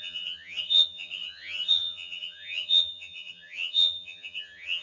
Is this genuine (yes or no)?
no